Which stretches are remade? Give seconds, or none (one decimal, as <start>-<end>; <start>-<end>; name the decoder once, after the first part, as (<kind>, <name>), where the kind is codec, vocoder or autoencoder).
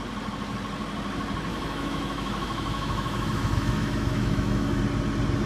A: 1.5-4.8 (autoencoder, DAC-VAE)